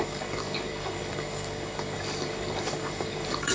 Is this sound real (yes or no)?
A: no